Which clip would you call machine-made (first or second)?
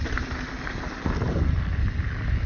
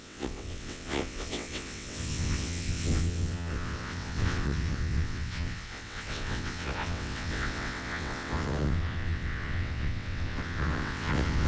second